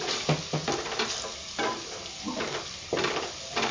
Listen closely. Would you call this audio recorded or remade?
recorded